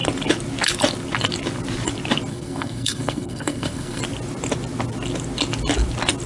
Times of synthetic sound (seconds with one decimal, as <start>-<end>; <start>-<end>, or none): 2.3-4.0

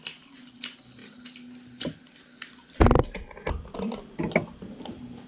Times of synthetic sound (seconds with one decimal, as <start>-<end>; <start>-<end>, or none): none

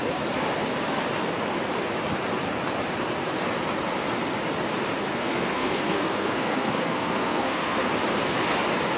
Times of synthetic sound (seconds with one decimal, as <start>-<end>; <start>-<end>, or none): 5.1-7.9

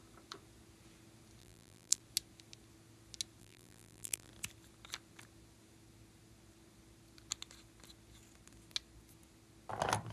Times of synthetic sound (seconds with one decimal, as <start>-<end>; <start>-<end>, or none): 1.4-2.0; 3.4-4.3

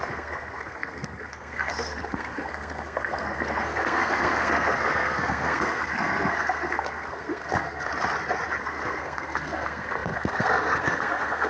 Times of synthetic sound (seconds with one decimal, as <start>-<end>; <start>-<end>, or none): 0.0-7.9; 8.6-11.5

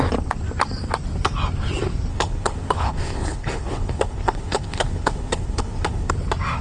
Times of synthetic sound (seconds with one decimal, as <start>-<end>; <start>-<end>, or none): 2.1-6.1